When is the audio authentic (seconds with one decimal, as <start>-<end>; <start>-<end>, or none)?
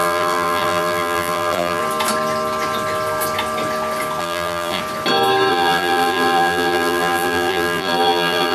1.8-4.2; 4.8-5.5